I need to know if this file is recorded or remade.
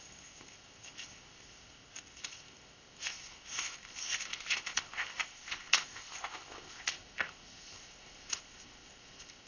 remade